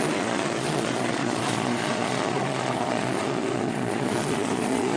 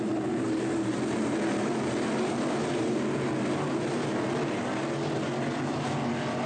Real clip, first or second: second